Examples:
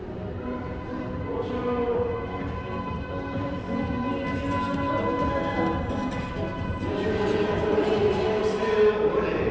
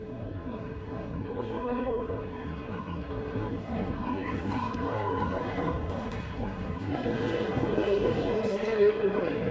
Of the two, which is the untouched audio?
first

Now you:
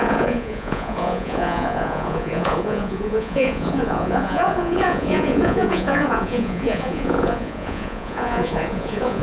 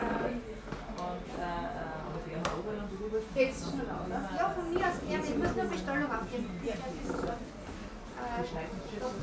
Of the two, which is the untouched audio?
second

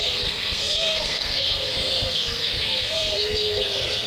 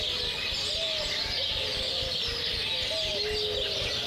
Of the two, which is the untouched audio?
second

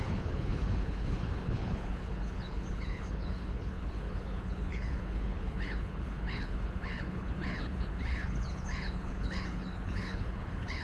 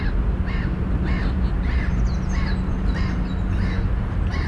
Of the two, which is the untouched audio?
second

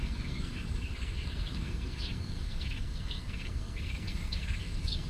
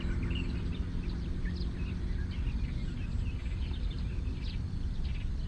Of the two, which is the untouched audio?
second